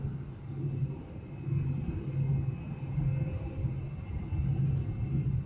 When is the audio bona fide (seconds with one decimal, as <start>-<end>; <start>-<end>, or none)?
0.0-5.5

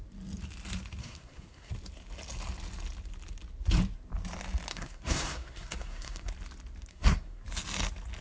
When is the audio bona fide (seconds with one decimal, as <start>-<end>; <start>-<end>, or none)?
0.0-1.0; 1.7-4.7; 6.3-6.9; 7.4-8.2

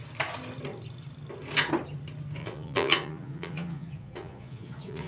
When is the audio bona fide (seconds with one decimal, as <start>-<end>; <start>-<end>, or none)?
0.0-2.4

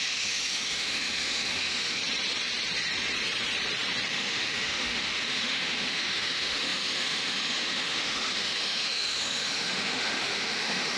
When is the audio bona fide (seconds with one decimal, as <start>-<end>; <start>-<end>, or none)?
2.0-4.1